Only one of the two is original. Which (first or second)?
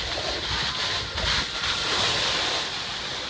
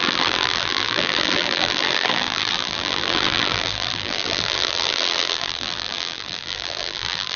first